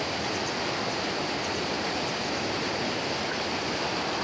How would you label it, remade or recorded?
recorded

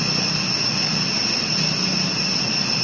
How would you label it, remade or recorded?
recorded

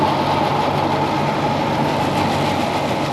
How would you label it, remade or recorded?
recorded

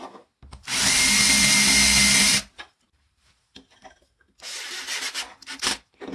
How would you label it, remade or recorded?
recorded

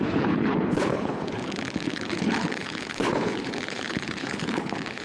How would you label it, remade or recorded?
remade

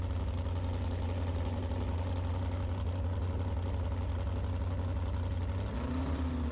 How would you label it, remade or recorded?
recorded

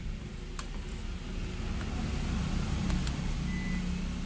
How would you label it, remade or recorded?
recorded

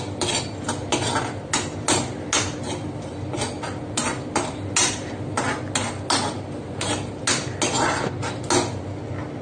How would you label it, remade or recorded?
recorded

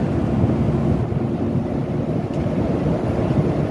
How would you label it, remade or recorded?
recorded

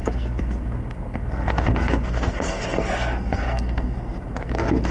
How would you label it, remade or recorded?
remade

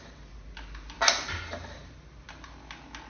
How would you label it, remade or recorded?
recorded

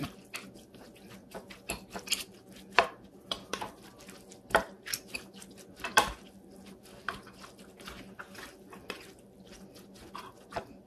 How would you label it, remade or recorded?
remade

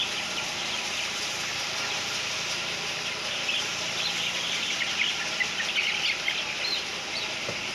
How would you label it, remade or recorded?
remade